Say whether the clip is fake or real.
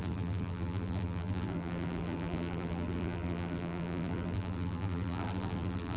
fake